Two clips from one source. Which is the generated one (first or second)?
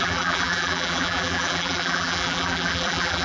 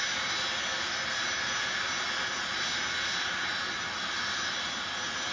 first